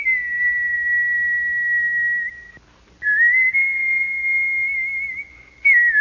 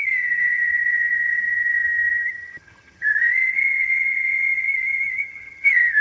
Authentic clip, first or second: first